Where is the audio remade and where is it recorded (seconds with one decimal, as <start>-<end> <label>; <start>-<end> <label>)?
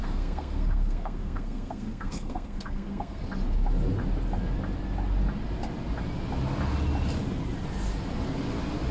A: 0.0-3.2 remade; 3.2-8.9 recorded